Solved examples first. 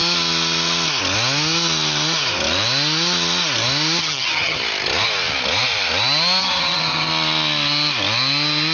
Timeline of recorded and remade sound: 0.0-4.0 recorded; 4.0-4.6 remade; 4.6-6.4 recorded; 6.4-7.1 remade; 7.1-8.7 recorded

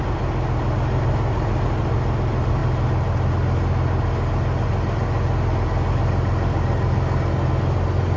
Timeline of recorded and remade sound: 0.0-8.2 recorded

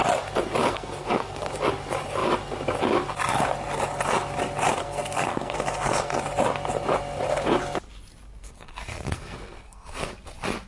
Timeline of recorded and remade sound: 0.0-0.6 recorded; 0.6-1.5 remade; 1.5-4.8 recorded; 4.8-6.1 remade; 6.1-8.4 recorded; 8.4-10.1 remade; 10.1-10.7 recorded